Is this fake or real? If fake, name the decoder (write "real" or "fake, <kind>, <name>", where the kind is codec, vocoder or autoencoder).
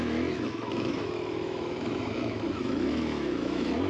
fake, autoencoder, DAC-VAE